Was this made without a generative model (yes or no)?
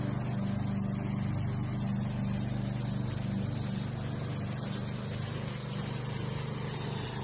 yes